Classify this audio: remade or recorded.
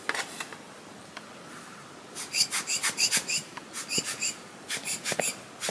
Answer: recorded